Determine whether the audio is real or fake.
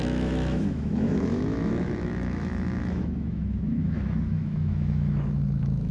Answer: fake